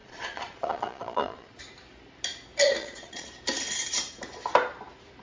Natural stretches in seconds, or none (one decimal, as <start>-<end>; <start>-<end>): 1.6-2.8; 3.3-5.2